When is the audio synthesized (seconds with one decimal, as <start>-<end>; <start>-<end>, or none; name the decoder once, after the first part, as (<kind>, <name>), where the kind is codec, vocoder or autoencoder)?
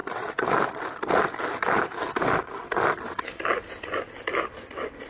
none